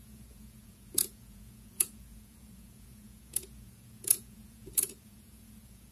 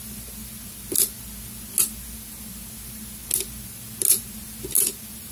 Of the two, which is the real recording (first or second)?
second